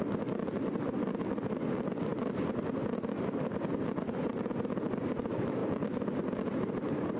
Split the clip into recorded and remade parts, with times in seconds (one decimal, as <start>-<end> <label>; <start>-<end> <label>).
0.0-7.2 recorded